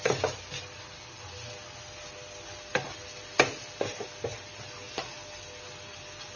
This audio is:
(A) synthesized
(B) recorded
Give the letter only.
B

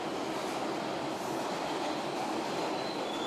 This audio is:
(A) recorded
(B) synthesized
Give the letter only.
A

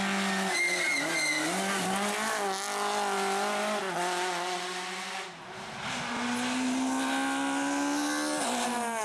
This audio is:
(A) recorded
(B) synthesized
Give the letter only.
A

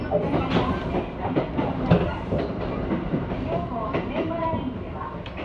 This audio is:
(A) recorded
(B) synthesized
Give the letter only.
A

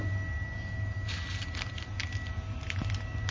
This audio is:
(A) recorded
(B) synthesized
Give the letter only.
A